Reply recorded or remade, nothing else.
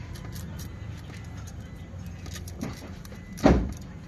recorded